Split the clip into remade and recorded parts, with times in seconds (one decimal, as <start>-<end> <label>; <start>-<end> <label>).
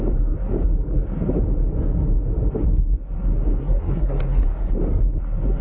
0.0-3.6 recorded; 3.6-4.7 remade; 4.7-5.6 recorded